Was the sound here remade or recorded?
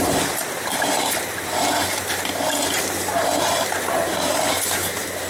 remade